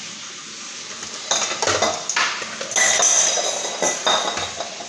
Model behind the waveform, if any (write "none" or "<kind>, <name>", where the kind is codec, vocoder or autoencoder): none